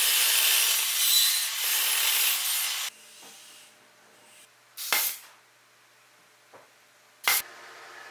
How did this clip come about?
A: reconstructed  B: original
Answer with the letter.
B